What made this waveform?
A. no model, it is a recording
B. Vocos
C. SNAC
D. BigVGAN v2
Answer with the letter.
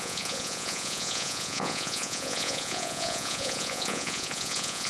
B